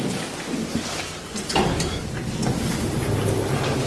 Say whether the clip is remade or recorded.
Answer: recorded